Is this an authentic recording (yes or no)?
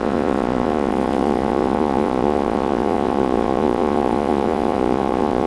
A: no